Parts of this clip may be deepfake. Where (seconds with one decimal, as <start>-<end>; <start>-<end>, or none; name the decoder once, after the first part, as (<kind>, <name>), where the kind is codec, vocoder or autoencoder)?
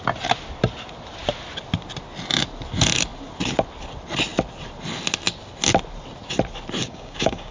6.9-7.5 (codec, DAC)